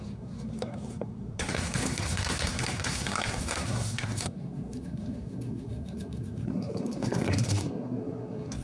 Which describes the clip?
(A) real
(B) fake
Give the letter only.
B